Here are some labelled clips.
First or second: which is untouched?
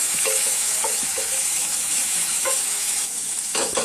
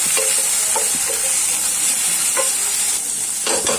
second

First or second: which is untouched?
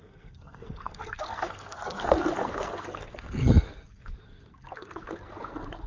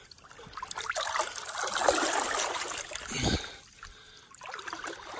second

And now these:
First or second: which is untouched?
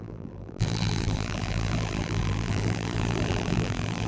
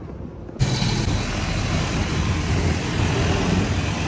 second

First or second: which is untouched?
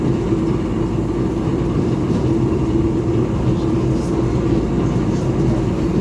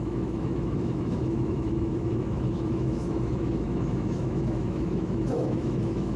first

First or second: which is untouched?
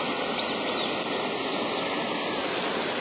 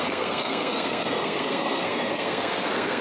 first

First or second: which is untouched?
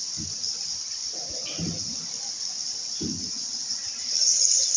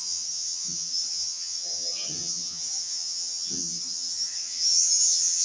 first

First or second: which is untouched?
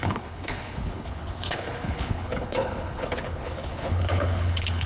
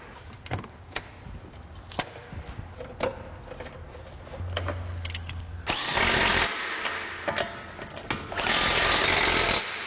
second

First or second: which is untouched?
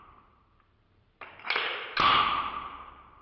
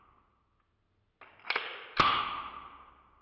second